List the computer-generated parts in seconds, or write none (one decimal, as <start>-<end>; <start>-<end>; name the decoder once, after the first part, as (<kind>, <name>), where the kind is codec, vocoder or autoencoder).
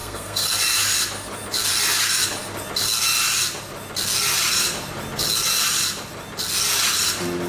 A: 0.0-0.5 (codec, SNAC)